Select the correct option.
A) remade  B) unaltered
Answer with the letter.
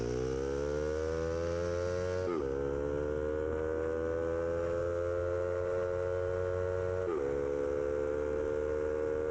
B